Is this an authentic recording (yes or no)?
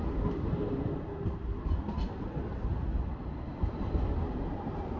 yes